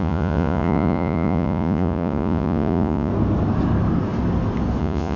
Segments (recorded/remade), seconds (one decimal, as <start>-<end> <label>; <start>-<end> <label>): 0.0-3.1 remade; 3.1-4.8 recorded; 4.8-5.2 remade